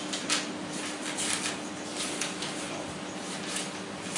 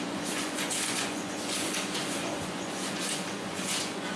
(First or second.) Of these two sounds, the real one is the first